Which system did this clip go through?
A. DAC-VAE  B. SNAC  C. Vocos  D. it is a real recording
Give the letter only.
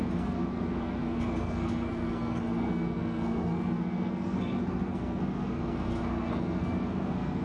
B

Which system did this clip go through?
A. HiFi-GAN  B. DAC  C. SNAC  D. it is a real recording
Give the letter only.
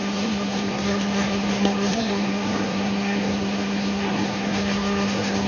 C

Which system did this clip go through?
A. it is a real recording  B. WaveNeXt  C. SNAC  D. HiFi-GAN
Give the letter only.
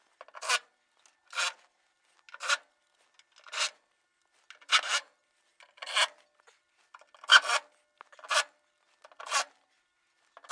A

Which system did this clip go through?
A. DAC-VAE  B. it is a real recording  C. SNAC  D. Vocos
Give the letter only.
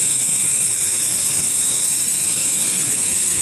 C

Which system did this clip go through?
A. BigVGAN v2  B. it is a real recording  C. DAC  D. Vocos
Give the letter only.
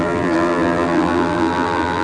A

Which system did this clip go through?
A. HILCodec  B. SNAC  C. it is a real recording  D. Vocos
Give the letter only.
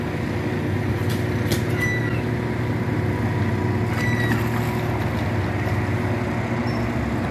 C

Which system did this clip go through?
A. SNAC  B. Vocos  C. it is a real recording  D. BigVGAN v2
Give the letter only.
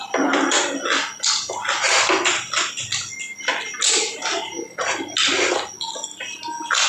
C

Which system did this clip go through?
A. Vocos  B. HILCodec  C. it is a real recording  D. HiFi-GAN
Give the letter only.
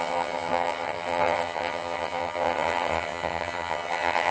D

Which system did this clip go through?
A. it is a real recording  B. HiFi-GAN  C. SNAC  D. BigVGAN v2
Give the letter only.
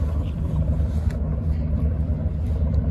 A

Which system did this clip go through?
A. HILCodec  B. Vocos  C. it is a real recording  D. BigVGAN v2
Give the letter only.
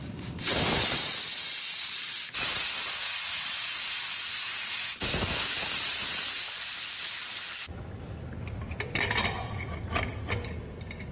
C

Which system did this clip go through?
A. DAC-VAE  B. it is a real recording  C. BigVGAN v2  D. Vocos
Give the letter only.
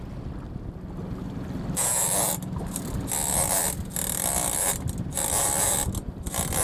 B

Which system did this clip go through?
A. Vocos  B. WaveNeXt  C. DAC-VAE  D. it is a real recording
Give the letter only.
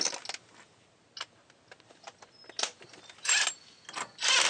D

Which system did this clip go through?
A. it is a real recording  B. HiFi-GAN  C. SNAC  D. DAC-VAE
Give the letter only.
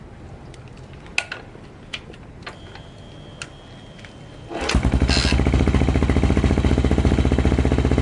A